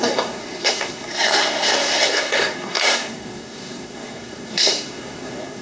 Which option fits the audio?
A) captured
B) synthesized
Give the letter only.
B